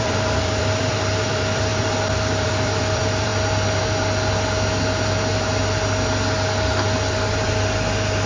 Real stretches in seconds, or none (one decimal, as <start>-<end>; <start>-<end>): 3.3-8.3